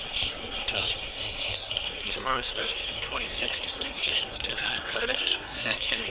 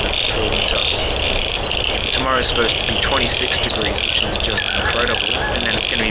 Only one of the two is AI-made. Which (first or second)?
first